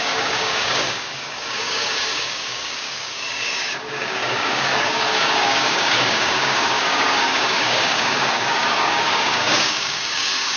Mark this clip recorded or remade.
remade